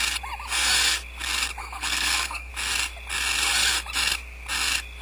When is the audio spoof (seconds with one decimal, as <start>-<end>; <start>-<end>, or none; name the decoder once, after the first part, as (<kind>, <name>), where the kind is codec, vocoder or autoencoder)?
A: 1.6-2.5 (codec, SNAC)